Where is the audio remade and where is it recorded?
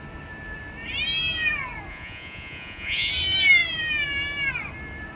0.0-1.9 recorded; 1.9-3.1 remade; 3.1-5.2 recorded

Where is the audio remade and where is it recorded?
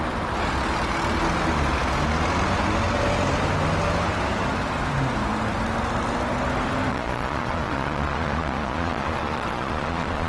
0.0-6.9 recorded; 6.9-10.3 remade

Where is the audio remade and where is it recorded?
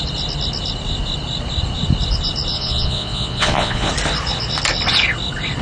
0.0-2.5 recorded; 2.5-3.9 remade; 3.9-5.6 recorded